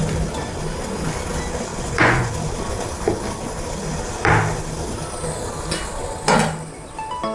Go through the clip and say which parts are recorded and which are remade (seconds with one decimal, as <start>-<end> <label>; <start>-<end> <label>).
0.0-1.7 recorded; 1.7-2.3 remade; 2.3-7.3 recorded